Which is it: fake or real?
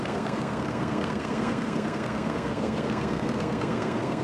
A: fake